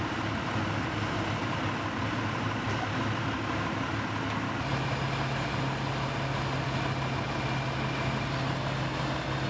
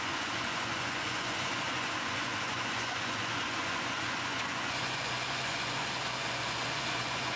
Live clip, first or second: first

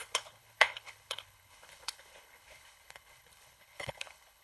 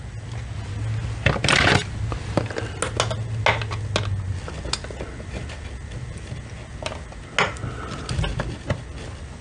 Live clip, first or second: second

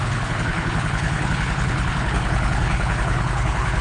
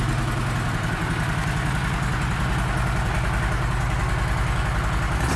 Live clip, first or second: second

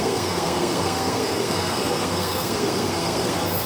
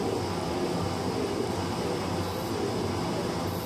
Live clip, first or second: second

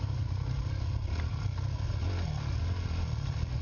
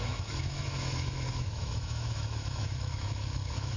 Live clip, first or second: first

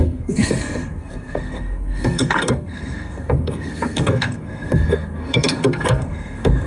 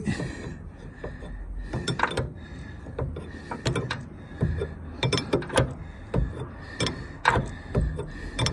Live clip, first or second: second